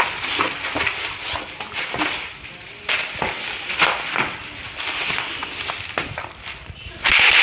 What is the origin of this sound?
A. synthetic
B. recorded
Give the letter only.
B